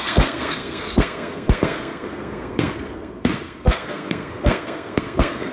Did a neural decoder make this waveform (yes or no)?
yes